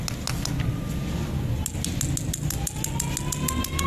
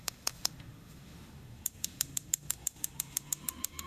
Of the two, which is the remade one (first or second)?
second